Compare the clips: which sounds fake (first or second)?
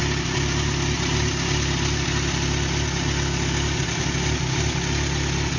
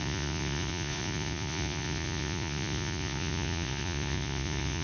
second